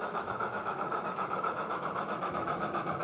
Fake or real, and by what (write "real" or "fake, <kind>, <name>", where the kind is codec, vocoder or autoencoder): fake, autoencoder, DAC-VAE